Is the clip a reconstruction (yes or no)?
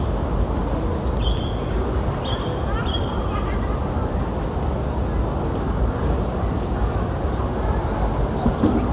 no